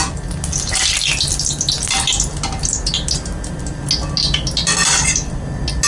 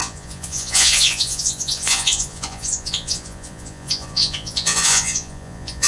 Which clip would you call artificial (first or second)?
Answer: second